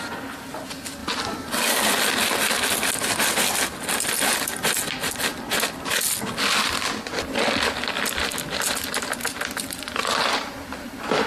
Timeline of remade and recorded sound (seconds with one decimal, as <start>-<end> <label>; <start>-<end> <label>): 0.0-1.0 recorded; 1.0-1.9 remade; 1.9-11.3 recorded